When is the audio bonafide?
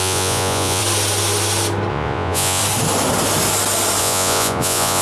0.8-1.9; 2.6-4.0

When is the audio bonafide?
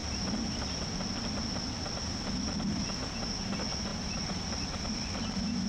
0.0-5.7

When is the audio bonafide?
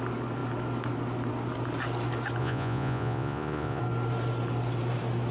0.0-2.4; 3.8-5.3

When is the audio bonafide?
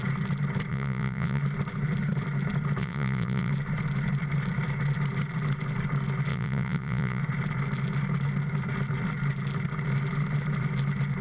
0.0-0.7; 1.4-2.8; 3.5-6.3; 7.2-11.2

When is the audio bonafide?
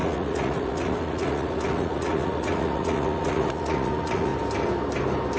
4.3-5.4